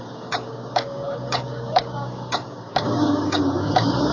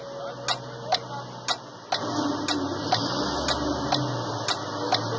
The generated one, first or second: first